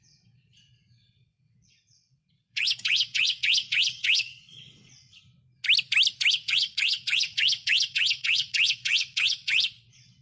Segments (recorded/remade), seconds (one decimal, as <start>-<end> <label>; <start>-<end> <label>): 0.0-5.2 remade; 5.2-6.3 recorded; 6.3-10.2 remade